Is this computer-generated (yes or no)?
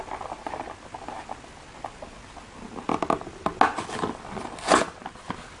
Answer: no